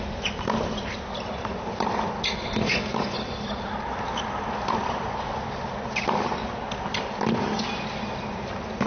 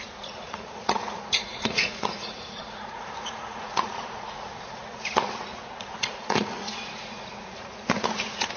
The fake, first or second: second